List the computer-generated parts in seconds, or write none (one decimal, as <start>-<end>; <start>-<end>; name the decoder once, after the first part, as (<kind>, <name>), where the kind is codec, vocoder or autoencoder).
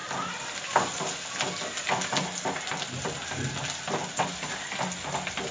none